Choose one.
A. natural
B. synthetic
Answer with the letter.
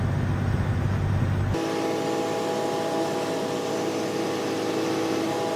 A